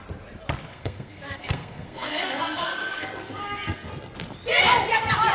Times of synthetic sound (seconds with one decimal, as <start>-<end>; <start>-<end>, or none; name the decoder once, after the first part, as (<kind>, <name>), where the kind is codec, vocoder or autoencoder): 0.7-3.9 (codec, SNAC)